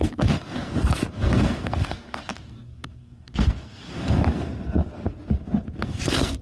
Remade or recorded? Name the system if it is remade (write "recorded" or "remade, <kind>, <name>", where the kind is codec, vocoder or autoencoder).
remade, codec, SNAC